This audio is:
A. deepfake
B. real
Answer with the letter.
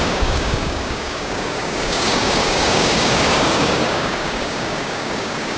A